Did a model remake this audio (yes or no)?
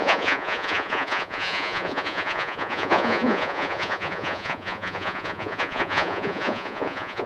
yes